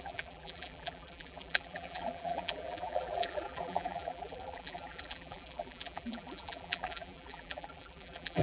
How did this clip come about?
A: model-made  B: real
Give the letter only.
A